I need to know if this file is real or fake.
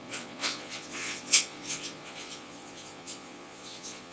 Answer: fake